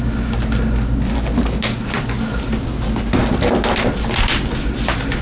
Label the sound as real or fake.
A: real